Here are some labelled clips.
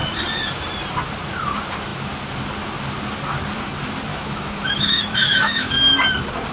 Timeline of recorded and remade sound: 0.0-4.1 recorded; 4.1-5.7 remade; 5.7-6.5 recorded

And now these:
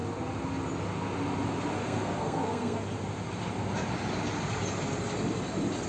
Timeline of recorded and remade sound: 0.0-1.8 recorded; 1.8-2.8 remade; 2.8-5.9 recorded

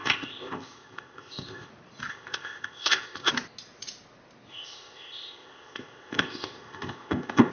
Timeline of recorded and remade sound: 0.0-1.7 remade; 1.7-2.1 recorded; 2.1-3.3 remade; 3.3-4.5 recorded; 4.5-7.5 remade

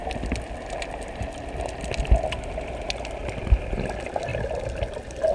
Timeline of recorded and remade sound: 0.0-5.3 recorded

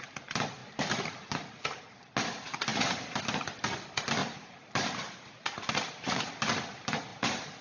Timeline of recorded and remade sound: 0.0-0.6 recorded; 0.6-1.6 remade; 1.6-2.7 recorded; 2.7-3.2 remade; 3.2-4.2 recorded; 4.2-6.3 remade; 6.3-7.1 recorded; 7.1-7.6 remade

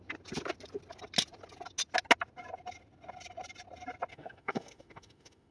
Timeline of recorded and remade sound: 0.0-4.1 recorded; 4.1-5.5 remade

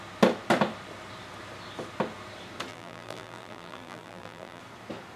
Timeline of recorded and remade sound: 0.0-2.7 recorded; 2.7-4.6 remade; 4.6-5.2 recorded